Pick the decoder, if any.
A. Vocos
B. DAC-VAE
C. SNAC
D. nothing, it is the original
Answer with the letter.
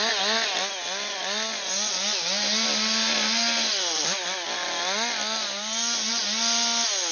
D